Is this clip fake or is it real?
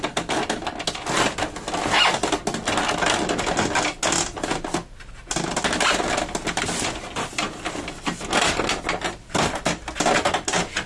real